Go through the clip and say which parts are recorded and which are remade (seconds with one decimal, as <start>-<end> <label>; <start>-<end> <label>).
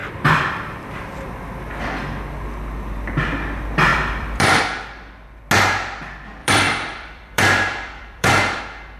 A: 0.0-3.9 recorded; 3.9-4.8 remade; 4.8-6.4 recorded; 6.4-8.6 remade; 8.6-9.0 recorded